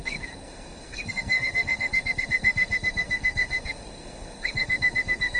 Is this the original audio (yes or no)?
no